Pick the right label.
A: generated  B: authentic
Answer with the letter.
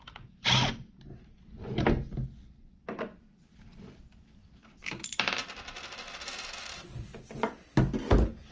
B